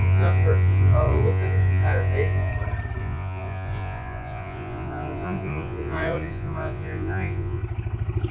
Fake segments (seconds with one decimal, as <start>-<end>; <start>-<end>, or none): 0.0-2.5; 3.0-7.6